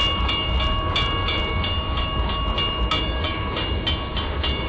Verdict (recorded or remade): recorded